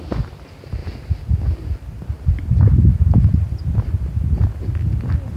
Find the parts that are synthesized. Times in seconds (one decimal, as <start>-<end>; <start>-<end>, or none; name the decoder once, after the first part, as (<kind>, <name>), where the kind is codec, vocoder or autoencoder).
none